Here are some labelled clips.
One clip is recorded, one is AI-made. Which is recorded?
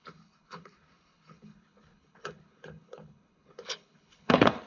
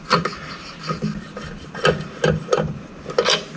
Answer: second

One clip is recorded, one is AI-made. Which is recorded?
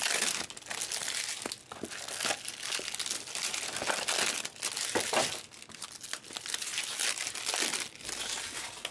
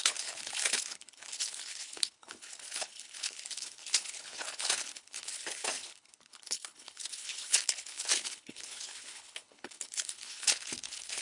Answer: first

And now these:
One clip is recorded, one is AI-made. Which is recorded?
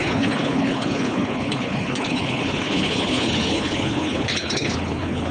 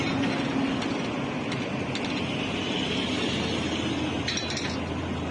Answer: second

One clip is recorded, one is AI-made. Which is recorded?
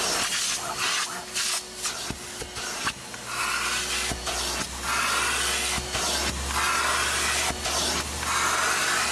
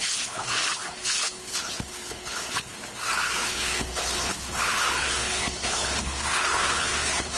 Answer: first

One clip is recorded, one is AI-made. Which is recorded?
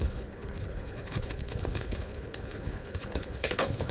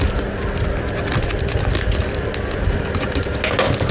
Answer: second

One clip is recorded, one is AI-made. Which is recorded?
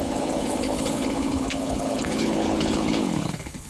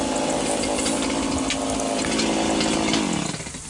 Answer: second